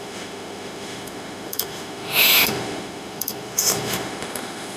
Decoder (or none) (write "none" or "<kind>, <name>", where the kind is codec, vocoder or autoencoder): autoencoder, DAC-VAE